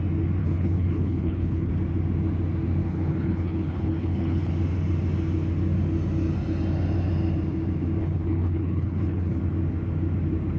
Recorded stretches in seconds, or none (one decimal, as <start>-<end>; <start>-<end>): 0.0-0.4; 1.7-2.8; 4.5-8.0; 9.4-10.6